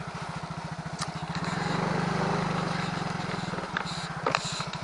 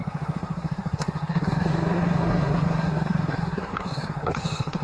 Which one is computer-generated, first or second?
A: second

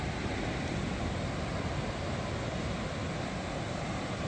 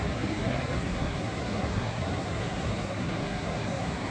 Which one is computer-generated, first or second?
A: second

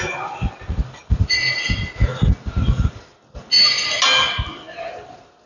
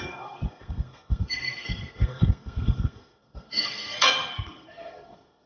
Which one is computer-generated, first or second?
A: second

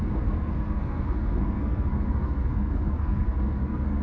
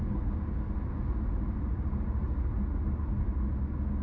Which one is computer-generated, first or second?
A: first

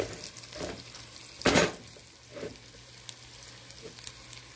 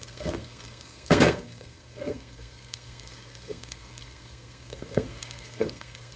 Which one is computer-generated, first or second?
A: second